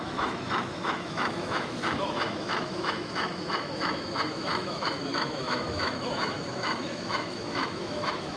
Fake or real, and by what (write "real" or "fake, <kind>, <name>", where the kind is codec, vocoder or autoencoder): fake, autoencoder, DAC-VAE